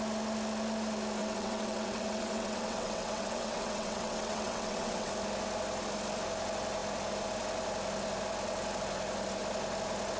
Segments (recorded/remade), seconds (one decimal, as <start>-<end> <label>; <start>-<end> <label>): 0.0-1.2 recorded; 1.2-5.1 remade; 5.1-10.2 recorded